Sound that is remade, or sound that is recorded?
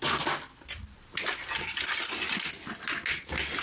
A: recorded